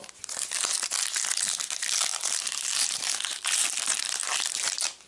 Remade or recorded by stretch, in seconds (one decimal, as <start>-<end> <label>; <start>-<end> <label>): 0.0-2.1 recorded; 2.1-3.1 remade; 3.1-4.2 recorded; 4.2-5.1 remade